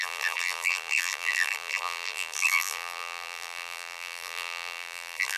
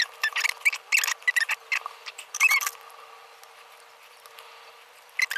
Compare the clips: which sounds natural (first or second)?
second